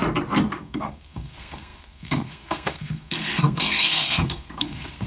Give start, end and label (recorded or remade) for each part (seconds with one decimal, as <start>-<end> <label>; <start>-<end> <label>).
0.0-0.5 recorded; 0.5-5.1 remade